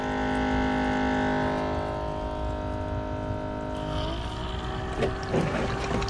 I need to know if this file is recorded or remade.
recorded